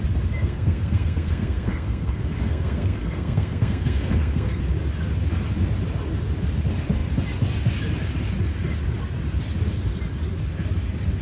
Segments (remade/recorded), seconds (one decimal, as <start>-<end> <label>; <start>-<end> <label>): 0.0-0.4 recorded; 0.4-4.6 remade; 4.6-11.2 recorded